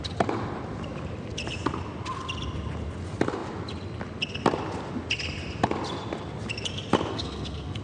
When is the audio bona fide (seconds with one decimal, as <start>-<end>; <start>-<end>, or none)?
0.0-7.1